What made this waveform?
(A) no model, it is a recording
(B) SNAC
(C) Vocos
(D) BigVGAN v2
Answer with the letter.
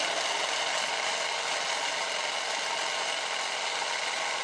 A